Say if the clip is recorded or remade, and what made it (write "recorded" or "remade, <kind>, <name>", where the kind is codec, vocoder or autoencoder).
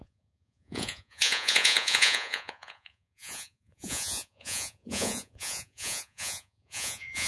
remade, vocoder, Vocos